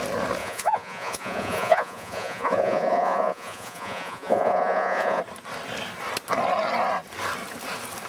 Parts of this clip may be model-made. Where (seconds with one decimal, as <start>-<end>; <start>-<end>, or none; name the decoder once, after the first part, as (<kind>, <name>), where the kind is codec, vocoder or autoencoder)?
0.4-5.2 (vocoder, Vocos)